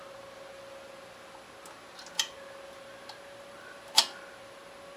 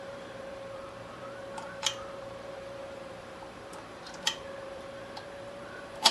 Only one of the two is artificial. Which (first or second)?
second